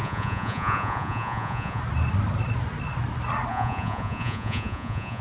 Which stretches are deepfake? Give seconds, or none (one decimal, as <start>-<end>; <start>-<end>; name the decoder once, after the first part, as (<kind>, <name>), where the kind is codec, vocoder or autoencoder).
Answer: 0.0-1.8 (vocoder, Vocos); 3.5-5.2